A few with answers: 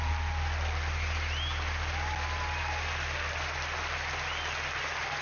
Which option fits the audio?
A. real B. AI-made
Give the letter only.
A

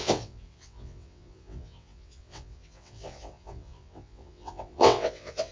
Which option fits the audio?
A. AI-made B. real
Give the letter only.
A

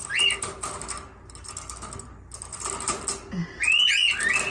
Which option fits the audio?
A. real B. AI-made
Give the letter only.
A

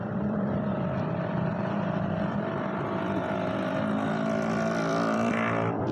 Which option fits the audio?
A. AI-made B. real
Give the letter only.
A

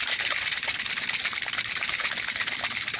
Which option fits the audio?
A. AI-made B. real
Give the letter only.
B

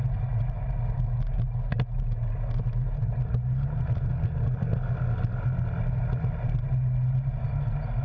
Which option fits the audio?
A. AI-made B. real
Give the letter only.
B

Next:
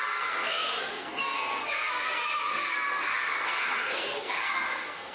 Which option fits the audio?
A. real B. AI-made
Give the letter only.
B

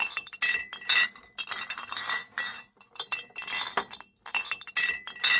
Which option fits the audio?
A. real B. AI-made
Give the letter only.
A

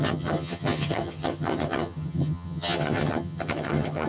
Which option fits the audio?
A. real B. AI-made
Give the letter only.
B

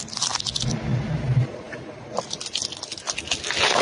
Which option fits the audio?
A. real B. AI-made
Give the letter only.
A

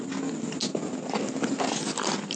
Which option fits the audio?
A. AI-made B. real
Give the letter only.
B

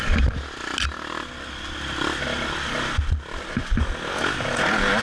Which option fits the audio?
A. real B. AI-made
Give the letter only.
A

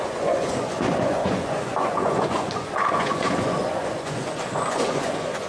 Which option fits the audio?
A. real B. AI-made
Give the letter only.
B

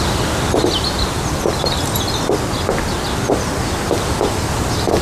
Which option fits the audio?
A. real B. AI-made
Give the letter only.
A